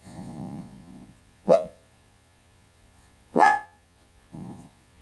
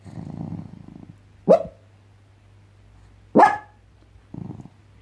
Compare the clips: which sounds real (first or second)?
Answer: second